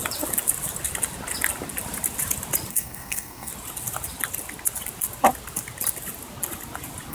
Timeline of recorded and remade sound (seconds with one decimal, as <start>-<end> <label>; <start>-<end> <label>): 0.0-2.7 recorded; 2.7-3.5 remade; 3.5-7.1 recorded